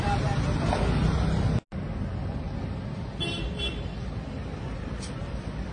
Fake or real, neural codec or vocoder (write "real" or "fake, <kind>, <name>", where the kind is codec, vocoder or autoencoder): real